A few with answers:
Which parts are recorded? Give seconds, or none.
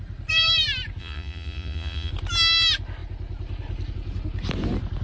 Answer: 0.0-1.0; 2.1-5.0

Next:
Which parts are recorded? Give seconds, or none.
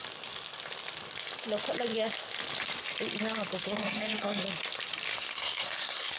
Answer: 0.0-3.6; 4.4-5.1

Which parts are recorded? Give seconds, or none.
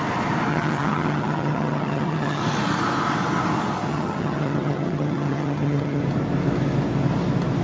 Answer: 0.0-0.5; 2.4-3.9; 6.0-7.6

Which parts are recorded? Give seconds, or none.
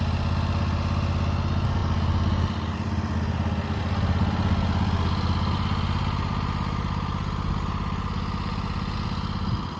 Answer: 0.0-9.8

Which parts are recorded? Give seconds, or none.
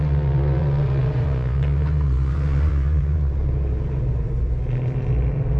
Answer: 3.4-5.6